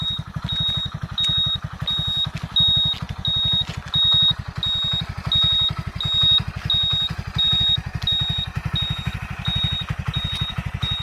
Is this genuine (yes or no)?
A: yes